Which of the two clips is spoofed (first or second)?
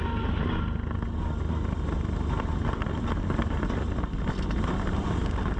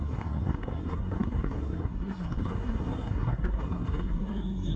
second